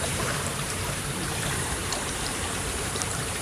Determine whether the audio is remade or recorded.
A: remade